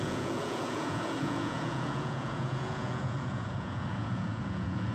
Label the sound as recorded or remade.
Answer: remade